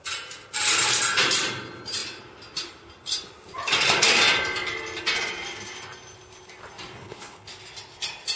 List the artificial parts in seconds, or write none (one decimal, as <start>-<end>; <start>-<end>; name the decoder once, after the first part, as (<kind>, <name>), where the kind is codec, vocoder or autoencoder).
7.0-7.5 (codec, HILCodec)